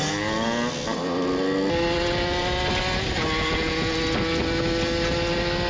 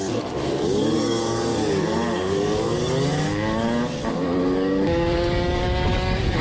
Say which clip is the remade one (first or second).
second